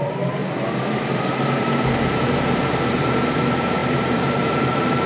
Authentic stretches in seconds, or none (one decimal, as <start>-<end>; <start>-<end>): 0.4-1.3

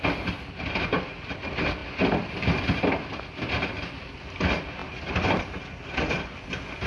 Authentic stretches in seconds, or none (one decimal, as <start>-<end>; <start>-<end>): 0.0-6.9

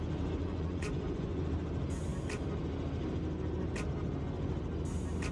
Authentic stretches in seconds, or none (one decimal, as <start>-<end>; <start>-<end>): 0.0-0.4; 1.5-5.3